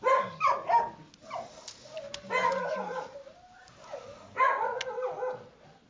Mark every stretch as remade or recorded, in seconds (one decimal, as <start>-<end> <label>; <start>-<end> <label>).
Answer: 0.0-5.9 recorded